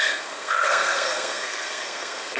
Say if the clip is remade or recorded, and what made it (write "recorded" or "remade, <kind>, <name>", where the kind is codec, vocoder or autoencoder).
remade, codec, SNAC